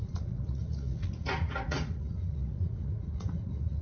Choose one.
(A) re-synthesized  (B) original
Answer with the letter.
A